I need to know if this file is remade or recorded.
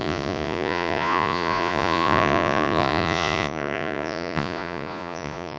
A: remade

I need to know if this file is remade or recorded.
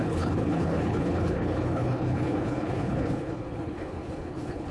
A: remade